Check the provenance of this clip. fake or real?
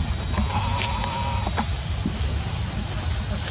real